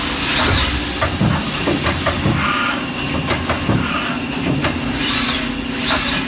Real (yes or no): yes